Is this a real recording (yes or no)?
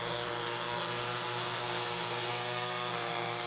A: no